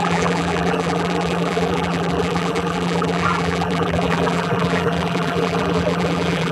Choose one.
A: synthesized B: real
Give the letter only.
A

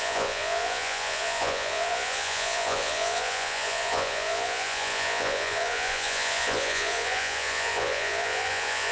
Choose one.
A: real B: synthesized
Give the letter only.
B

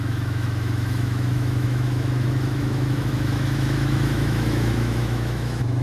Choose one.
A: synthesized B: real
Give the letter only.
A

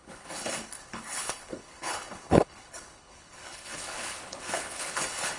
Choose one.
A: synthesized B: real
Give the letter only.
A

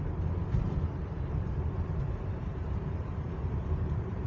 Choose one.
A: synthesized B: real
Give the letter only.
A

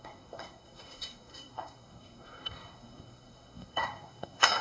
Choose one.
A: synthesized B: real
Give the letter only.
A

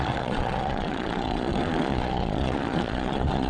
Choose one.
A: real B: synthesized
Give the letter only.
B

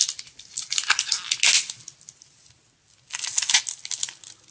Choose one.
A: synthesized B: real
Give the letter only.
B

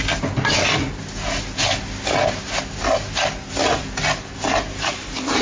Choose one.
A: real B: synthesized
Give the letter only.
A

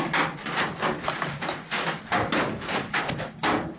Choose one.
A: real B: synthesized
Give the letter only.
A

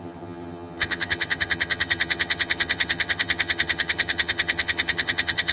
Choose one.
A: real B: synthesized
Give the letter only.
B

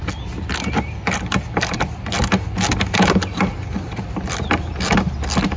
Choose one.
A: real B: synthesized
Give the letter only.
A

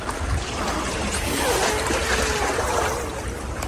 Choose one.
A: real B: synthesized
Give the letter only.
A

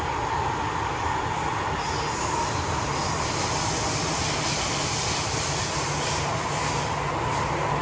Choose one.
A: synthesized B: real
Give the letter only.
B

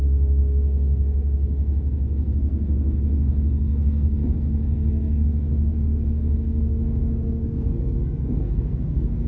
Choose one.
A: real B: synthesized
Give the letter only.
B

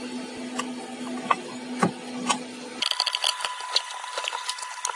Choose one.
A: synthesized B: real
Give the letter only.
B